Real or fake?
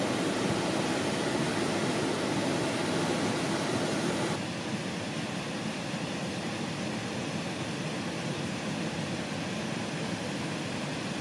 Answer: real